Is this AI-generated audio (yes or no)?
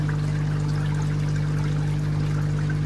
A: no